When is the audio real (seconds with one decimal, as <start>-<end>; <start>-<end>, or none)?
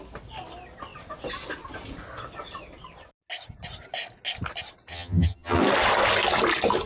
0.0-4.9; 5.6-6.9